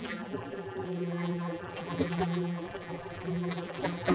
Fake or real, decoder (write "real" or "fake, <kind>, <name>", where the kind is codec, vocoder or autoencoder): fake, vocoder, BigVGAN v2